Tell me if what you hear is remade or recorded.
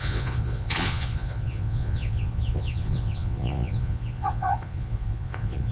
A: remade